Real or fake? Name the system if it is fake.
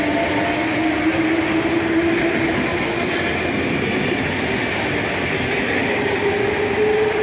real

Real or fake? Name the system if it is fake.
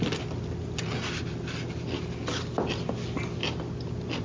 real